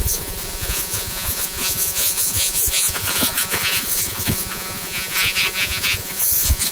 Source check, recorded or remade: remade